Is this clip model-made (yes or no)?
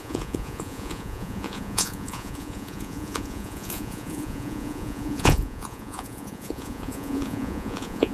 yes